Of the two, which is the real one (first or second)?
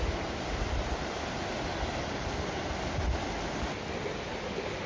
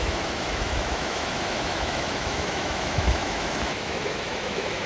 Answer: first